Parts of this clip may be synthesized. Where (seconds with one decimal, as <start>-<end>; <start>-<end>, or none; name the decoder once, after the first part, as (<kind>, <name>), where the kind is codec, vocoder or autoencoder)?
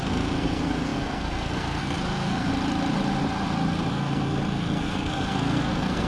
0.0-2.5 (codec, SNAC); 3.9-6.1